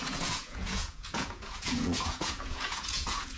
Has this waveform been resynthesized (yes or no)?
yes